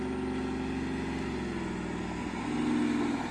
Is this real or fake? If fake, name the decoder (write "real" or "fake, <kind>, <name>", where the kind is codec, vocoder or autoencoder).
real